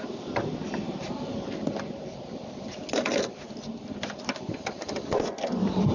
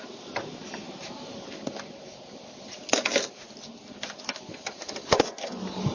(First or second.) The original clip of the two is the second